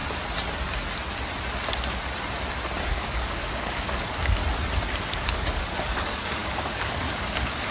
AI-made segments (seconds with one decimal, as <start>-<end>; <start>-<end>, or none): 2.9-4.4; 5.0-7.7